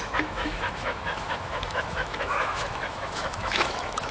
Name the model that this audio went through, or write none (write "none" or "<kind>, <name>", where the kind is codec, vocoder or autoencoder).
autoencoder, DAC-VAE